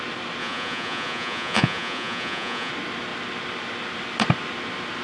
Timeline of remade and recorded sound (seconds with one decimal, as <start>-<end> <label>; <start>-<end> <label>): 0.0-0.4 recorded; 0.4-2.7 remade; 2.7-5.0 recorded